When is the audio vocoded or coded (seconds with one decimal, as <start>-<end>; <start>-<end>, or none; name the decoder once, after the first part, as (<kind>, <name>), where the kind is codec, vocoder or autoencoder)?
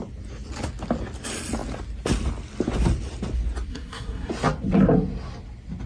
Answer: 3.7-4.3 (codec, SNAC)